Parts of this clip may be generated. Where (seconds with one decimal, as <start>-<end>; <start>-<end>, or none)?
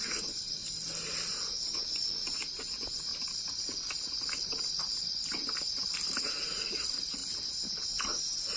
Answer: 0.0-0.6; 1.6-3.1; 6.2-7.2; 8.2-8.6